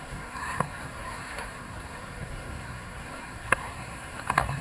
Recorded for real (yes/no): no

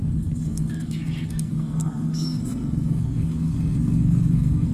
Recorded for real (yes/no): no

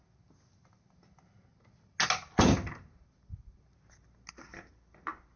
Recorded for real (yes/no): yes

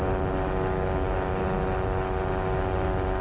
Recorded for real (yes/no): yes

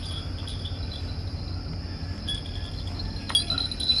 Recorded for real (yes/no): yes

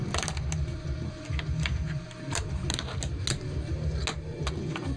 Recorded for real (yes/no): yes